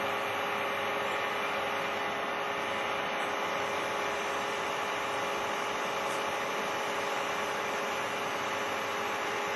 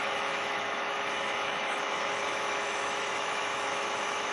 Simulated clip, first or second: second